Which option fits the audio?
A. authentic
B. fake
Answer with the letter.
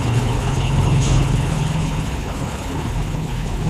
B